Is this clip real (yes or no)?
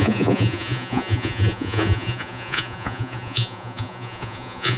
no